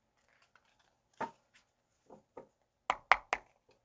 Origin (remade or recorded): recorded